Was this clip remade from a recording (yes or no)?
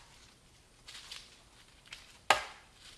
no